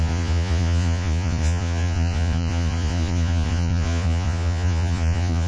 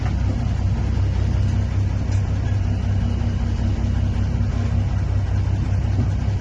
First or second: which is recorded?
second